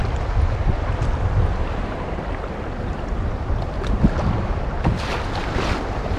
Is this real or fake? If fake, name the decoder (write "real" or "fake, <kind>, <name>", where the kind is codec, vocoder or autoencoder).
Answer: real